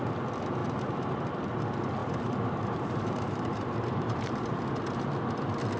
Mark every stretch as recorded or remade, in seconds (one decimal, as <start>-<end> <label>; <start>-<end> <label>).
0.0-0.6 recorded; 0.6-1.2 remade; 1.2-2.0 recorded; 2.0-4.6 remade; 4.6-5.8 recorded